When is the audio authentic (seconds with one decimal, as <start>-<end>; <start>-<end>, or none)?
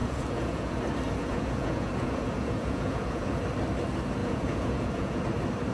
0.7-1.2; 3.4-4.2; 5.2-5.7